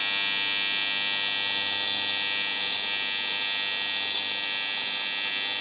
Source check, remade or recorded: recorded